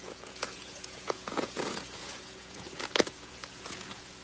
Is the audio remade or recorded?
remade